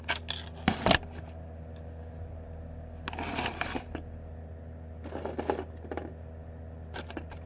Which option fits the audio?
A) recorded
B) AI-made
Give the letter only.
A